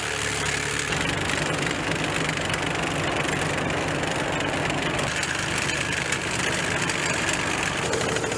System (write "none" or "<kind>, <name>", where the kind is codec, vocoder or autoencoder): none